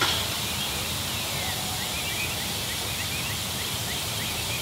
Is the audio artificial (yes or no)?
no